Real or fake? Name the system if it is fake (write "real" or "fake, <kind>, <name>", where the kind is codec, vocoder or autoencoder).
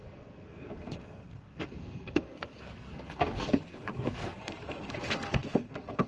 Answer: fake, codec, SNAC